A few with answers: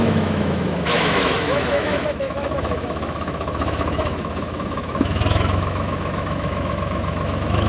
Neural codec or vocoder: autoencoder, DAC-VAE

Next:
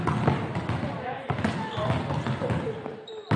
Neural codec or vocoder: none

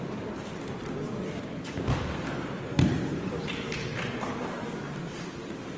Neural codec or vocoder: none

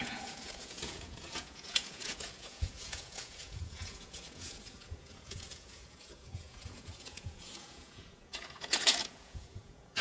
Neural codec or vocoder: vocoder, Vocos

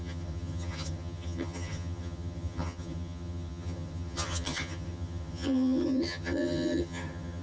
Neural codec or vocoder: vocoder, HiFi-GAN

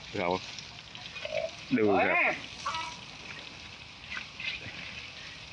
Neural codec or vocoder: none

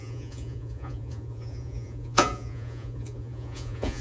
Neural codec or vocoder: vocoder, Vocos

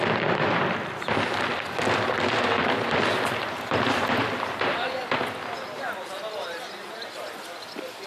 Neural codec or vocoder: none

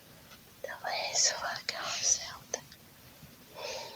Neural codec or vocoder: vocoder, BigVGAN v2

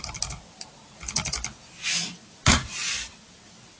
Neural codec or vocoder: none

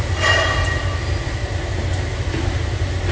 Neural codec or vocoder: none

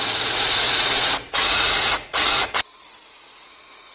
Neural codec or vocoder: vocoder, Vocos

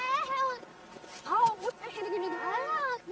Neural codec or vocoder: none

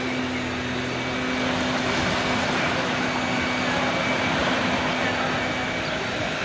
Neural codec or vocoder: none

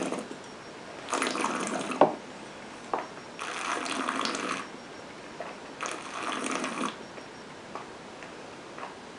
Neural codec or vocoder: none